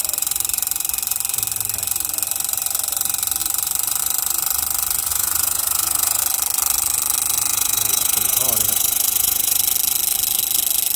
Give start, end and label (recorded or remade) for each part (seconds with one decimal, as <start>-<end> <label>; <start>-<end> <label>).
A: 0.0-5.1 recorded; 5.1-6.2 remade; 6.2-7.5 recorded; 7.5-9.6 remade; 9.6-11.0 recorded